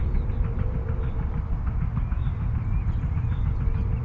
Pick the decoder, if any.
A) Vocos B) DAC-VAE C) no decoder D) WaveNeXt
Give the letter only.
C